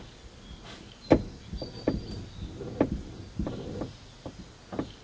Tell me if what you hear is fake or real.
real